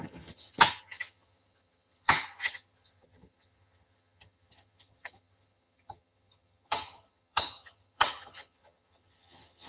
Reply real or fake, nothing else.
fake